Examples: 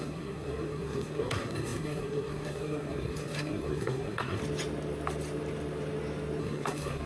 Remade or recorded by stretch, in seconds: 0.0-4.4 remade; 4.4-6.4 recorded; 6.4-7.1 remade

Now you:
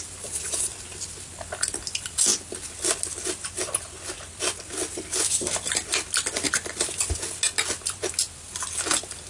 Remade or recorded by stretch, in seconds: 0.0-9.3 recorded

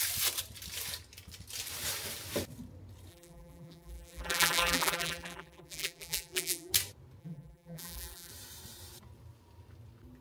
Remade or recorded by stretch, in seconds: 0.0-3.1 recorded; 3.1-6.7 remade; 6.7-7.2 recorded; 7.2-8.3 remade; 8.3-10.2 recorded

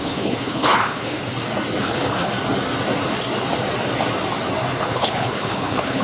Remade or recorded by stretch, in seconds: 0.0-1.2 remade; 1.2-1.8 recorded; 1.8-2.3 remade; 2.3-4.9 recorded; 4.9-6.0 remade

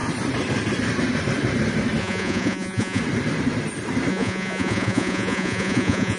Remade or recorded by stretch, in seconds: 0.0-2.0 recorded; 2.0-3.0 remade; 3.0-4.1 recorded; 4.1-6.2 remade

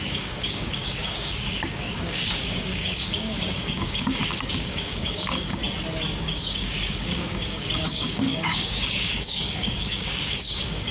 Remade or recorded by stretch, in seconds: 0.0-5.6 remade; 5.6-6.2 recorded; 6.2-10.9 remade